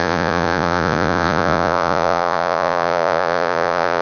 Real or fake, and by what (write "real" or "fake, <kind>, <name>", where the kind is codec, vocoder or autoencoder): fake, vocoder, Vocos